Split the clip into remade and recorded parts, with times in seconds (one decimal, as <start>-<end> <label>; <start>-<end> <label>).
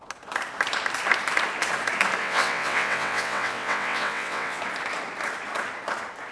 0.0-2.2 recorded; 2.2-4.6 remade; 4.6-6.3 recorded